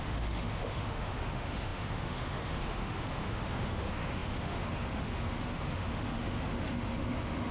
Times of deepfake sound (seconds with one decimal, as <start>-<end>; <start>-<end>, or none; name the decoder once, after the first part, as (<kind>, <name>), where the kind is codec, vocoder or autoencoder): 0.0-7.5 (autoencoder, DAC-VAE)